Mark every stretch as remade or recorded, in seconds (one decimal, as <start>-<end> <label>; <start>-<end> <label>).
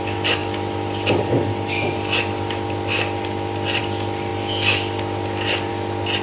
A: 0.0-0.4 recorded; 0.4-3.8 remade; 3.8-6.2 recorded